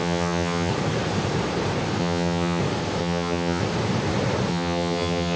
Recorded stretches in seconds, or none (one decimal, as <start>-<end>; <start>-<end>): 0.7-2.0; 2.6-3.0; 3.6-4.5

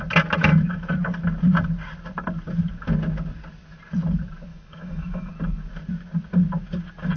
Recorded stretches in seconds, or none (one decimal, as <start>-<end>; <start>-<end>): 0.0-4.5; 5.3-7.2

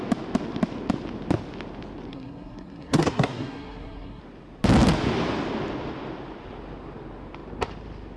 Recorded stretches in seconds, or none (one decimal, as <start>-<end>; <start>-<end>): 0.0-2.1; 4.2-8.2

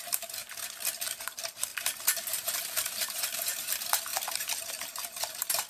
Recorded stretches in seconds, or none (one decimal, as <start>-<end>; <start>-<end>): 0.4-0.9; 1.7-2.4

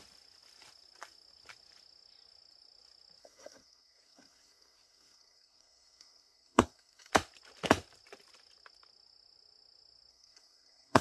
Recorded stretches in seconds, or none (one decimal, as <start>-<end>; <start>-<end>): 0.0-3.2; 7.1-10.1

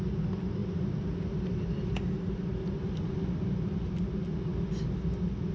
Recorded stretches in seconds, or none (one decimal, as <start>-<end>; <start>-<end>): 0.0-5.5

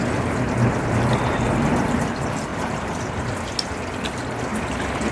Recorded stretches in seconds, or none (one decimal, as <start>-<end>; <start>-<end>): 2.5-5.1